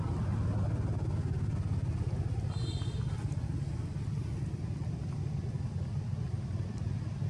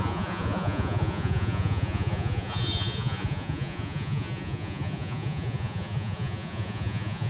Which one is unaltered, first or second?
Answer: first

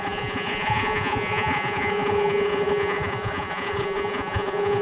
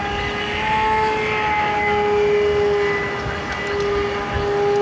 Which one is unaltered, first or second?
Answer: second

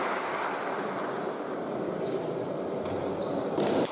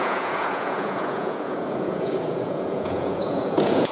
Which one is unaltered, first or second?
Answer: first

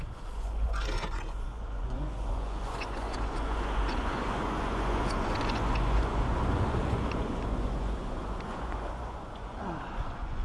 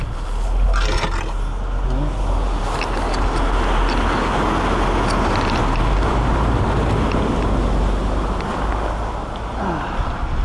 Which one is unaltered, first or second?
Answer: second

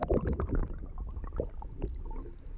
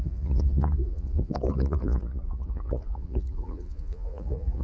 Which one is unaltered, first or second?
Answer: first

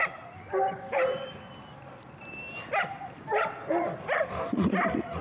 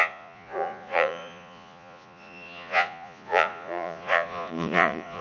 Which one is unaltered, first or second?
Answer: first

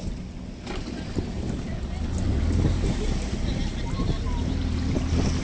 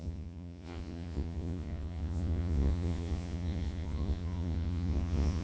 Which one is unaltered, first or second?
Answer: first